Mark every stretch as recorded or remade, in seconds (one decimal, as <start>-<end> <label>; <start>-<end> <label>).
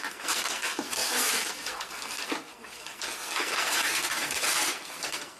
0.0-5.4 remade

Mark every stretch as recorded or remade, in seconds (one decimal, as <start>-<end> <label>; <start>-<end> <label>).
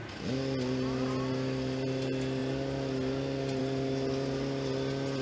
0.0-5.2 recorded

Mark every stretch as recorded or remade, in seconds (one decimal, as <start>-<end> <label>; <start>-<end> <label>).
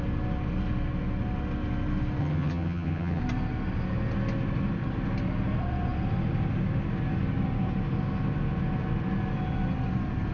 0.0-2.2 recorded; 2.2-3.2 remade; 3.2-10.3 recorded